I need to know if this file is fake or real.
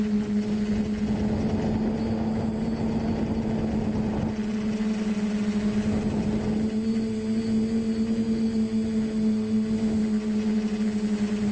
real